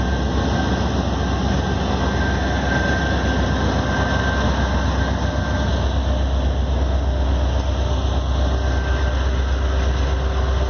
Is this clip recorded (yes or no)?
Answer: yes